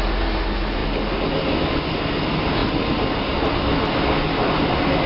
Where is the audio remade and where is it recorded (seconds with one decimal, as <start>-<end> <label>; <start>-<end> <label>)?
0.0-5.1 recorded